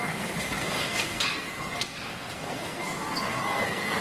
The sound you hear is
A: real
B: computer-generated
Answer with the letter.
B